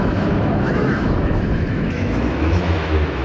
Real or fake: fake